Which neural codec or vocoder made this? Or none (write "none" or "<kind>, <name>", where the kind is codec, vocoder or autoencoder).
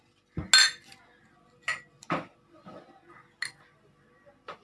none